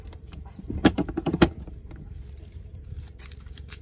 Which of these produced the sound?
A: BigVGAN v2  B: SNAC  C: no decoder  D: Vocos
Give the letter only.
A